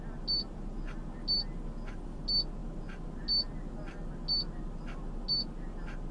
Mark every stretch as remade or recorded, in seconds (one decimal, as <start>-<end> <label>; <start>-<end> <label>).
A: 0.0-6.1 recorded